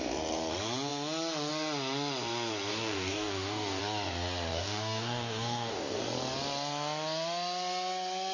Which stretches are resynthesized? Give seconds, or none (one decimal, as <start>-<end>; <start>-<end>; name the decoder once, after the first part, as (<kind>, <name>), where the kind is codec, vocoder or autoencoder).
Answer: 2.7-3.8 (codec, DAC); 4.5-6.0